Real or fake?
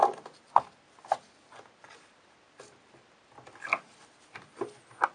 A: real